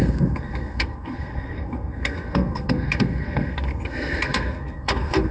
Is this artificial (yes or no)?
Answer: yes